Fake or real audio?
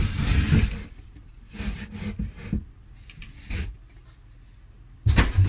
real